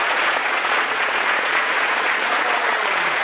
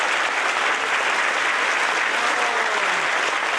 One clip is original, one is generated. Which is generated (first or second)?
first